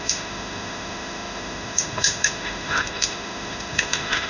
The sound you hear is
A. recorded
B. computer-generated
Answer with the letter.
B